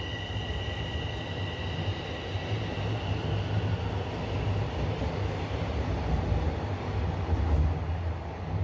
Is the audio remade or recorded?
recorded